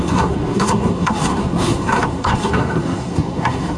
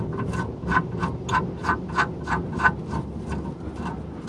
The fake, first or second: first